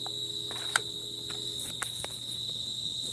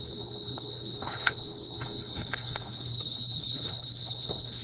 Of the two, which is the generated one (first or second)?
second